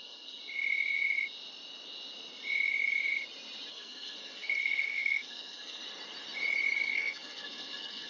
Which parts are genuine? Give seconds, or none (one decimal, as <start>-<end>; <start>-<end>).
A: 0.4-3.7; 5.8-6.8